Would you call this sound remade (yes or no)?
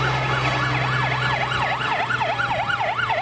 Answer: no